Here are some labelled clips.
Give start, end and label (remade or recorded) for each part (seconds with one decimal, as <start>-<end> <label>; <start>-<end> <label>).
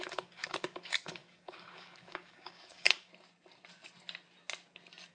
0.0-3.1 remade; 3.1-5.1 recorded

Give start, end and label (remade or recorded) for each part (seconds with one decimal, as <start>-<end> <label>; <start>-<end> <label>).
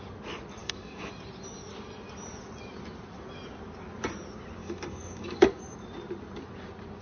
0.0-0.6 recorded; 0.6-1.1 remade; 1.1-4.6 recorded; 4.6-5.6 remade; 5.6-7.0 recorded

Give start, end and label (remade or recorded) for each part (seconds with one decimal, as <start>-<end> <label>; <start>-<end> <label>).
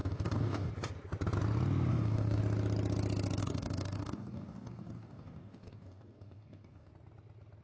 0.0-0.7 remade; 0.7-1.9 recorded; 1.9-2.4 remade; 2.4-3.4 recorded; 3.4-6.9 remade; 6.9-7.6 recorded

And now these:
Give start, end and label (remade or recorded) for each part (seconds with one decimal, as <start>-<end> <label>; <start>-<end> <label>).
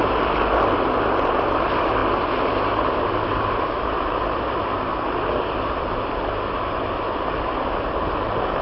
0.0-8.6 recorded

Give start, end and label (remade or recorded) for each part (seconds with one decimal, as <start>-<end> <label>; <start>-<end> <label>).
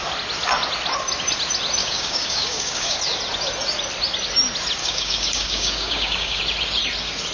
0.0-1.8 recorded; 1.8-3.0 remade; 3.0-4.8 recorded; 4.8-6.4 remade; 6.4-7.3 recorded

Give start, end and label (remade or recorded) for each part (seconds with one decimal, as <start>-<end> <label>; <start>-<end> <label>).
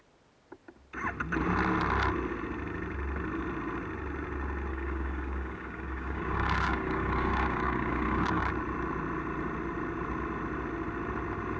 0.0-4.7 recorded; 4.7-8.5 remade; 8.5-11.6 recorded